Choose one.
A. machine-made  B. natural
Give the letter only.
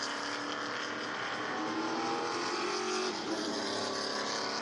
B